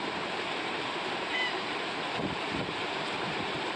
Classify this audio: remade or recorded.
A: remade